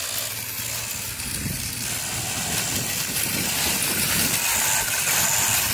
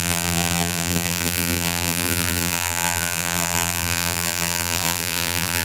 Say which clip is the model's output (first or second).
second